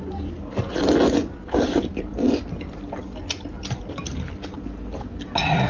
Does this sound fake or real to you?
real